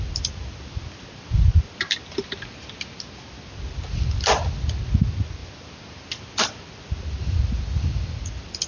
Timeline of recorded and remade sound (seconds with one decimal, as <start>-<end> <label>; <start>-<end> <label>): 0.0-8.7 recorded